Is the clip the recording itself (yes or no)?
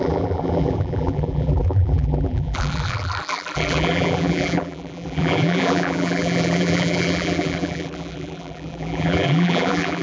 no